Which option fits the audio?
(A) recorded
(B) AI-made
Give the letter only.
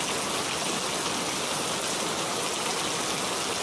A